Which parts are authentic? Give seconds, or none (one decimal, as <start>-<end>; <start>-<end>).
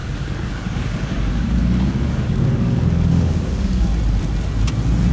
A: 3.9-5.1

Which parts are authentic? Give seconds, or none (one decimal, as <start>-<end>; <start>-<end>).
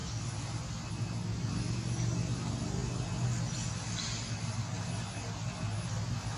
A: 0.0-6.4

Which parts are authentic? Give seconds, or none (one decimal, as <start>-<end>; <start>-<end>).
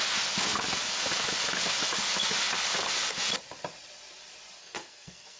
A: 0.0-4.6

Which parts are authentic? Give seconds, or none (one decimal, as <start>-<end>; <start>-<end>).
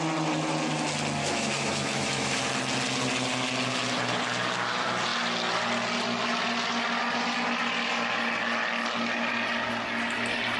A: 0.0-1.2; 2.4-10.6